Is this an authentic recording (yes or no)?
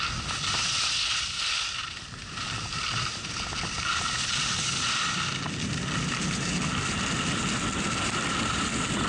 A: yes